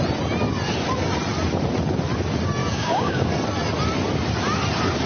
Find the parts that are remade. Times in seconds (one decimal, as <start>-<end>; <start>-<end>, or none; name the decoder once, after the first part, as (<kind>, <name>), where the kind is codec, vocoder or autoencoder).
2.6-3.3 (codec, DAC)